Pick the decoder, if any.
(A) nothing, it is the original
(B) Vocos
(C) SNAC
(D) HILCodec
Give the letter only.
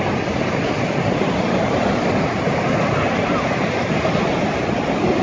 A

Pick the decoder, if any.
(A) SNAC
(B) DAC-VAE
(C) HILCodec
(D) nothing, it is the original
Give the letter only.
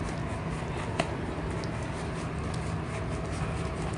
D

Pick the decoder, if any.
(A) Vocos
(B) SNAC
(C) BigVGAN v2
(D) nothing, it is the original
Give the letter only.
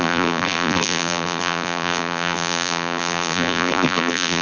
C